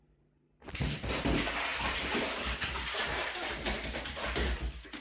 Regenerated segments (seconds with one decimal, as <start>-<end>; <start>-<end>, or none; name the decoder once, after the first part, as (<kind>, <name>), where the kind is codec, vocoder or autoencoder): 0.0-5.0 (vocoder, BigVGAN v2)